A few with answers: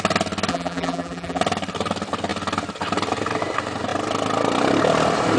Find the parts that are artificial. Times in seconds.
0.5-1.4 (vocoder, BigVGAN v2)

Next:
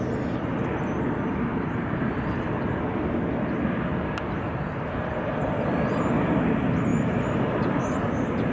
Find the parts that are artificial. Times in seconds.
1.5-2.8 (vocoder, BigVGAN v2); 6.9-7.8

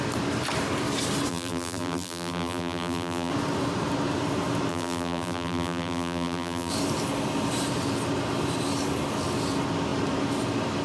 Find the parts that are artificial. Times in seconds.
1.3-3.3 (vocoder, BigVGAN v2); 4.7-6.7